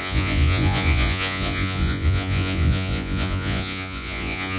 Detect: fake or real fake